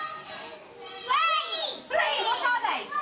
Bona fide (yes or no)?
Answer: yes